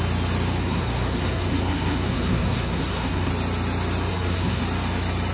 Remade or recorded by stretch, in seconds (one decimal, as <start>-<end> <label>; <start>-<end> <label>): 0.0-0.6 recorded; 0.6-3.3 remade; 3.3-4.1 recorded; 4.1-4.6 remade; 4.6-5.3 recorded